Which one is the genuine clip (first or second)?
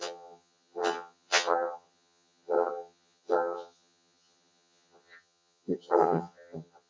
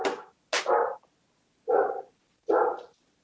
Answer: second